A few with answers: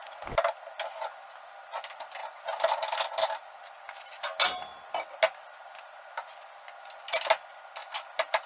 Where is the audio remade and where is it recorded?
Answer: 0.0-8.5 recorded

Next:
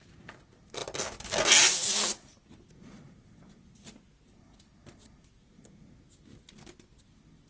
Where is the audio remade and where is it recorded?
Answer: 0.0-7.5 recorded

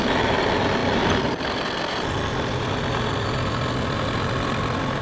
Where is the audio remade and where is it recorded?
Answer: 0.0-5.0 recorded

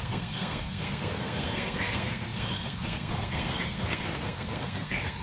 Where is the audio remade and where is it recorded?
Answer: 0.0-5.2 remade